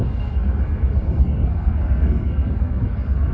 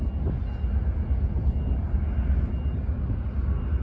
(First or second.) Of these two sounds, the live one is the second